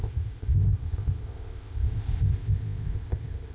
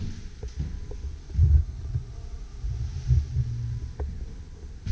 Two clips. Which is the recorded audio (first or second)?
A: second